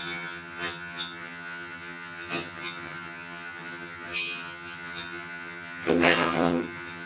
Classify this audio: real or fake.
fake